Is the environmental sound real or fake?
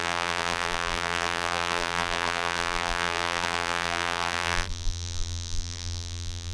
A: fake